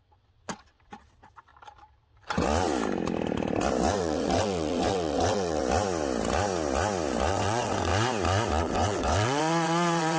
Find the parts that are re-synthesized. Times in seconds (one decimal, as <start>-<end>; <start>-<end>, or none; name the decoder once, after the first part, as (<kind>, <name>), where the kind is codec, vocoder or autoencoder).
0.0-1.5 (vocoder, WaveNeXt); 4.0-5.6; 7.3-7.9; 8.6-10.2